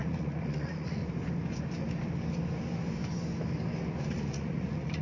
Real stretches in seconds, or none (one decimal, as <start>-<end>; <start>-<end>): 1.0-4.0